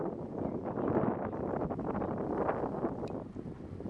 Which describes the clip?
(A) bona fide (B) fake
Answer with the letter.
A